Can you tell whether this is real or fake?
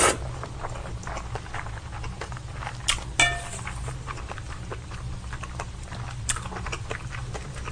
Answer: real